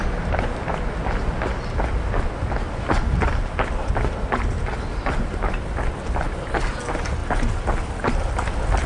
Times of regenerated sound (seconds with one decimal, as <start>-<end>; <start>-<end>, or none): none